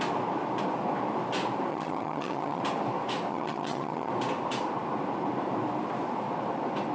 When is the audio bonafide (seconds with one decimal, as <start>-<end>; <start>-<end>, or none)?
0.0-1.7; 2.6-3.3; 4.1-6.9